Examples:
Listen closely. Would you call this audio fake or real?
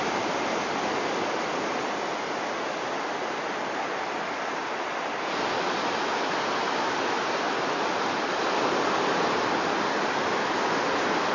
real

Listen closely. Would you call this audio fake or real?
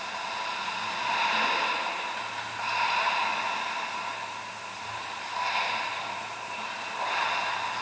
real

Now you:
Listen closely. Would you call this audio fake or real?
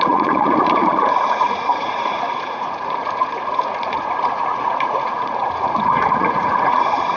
fake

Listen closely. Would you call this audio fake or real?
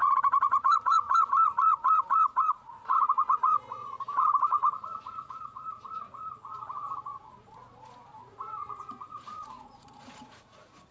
fake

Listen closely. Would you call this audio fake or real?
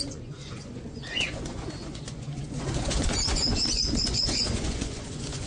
fake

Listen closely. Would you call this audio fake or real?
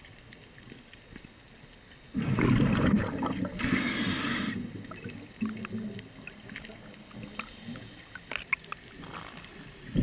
real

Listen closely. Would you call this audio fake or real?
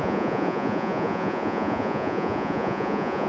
fake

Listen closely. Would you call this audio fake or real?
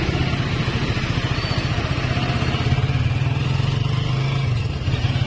real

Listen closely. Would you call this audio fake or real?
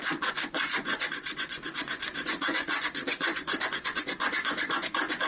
fake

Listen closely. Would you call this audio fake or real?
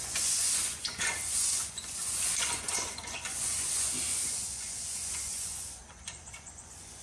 fake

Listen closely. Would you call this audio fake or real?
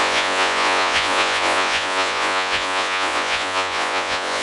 fake